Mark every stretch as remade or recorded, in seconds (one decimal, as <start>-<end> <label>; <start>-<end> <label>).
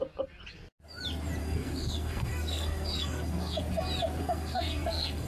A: 0.0-1.4 recorded; 1.4-3.6 remade; 3.6-4.2 recorded; 4.2-5.3 remade